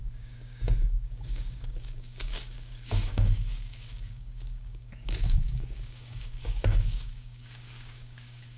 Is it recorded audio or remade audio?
remade